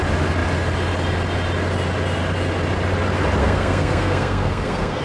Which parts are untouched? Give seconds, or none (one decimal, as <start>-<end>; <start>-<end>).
0.0-3.4